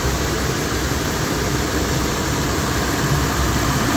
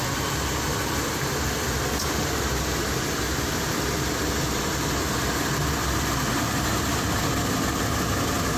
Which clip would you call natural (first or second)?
second